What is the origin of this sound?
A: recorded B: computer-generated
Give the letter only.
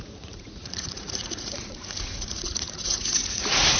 B